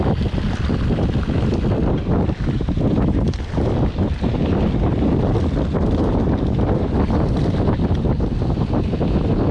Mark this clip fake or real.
fake